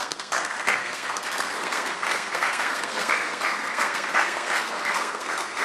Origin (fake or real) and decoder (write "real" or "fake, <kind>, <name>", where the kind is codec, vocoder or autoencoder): fake, codec, SNAC